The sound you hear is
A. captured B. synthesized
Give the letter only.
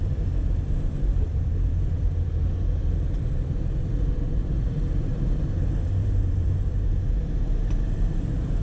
B